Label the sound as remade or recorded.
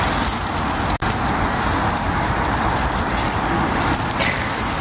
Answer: recorded